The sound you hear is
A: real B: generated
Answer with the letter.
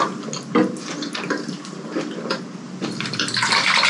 A